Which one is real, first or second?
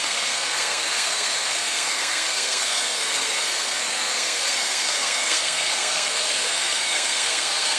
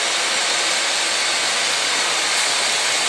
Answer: second